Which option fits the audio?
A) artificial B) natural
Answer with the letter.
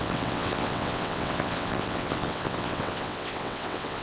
A